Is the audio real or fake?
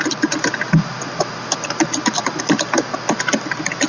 real